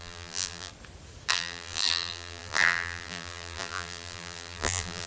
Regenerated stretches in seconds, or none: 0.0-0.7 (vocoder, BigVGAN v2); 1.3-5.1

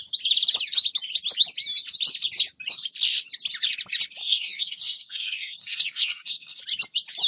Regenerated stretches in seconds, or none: 4.2-6.6 (codec, SNAC)

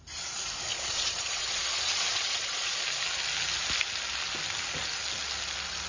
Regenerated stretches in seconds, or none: 0.7-2.8 (vocoder, Vocos)

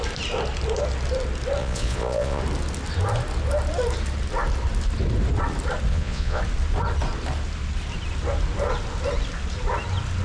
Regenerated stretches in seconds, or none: 1.6-2.4 (vocoder, Vocos); 5.9-6.4

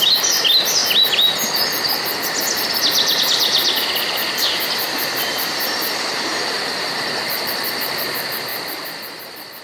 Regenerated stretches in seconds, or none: none